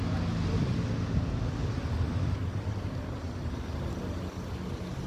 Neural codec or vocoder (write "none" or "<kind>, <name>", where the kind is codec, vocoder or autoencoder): none